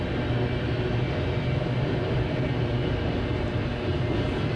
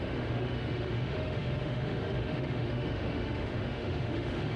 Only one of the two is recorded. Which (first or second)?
first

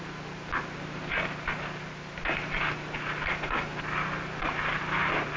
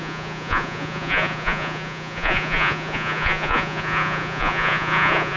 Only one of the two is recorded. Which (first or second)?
first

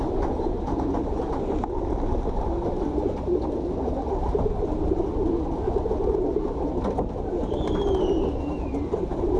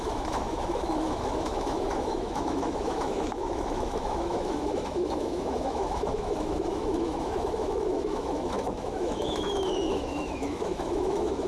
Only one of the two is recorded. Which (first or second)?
first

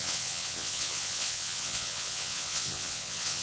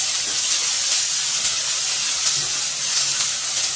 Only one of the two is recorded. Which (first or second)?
second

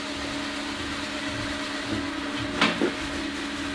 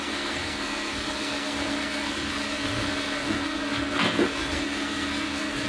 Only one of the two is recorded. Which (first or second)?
first